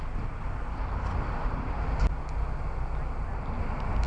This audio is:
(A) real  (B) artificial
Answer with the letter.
A